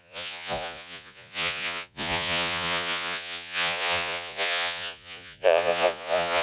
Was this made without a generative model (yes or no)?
no